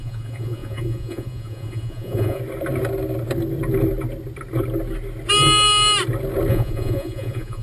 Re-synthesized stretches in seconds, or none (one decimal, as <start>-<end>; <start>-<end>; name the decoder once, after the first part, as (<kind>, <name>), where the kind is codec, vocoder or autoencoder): 0.0-2.4 (vocoder, Vocos); 6.5-7.6